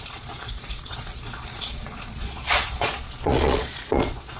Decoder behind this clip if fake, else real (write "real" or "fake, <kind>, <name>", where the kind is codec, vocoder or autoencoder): fake, vocoder, Vocos